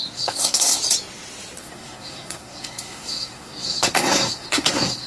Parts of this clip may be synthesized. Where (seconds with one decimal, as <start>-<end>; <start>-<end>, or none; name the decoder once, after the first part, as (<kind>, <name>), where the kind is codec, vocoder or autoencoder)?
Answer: 0.0-0.8 (codec, SNAC); 1.6-5.1